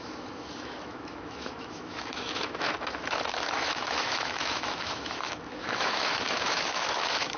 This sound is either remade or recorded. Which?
remade